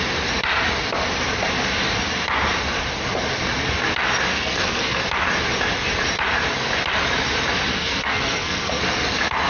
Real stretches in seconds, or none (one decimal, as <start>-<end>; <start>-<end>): 0.0-4.3; 5.0-7.7; 8.8-9.5